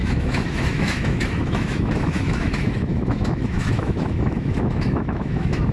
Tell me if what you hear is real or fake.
fake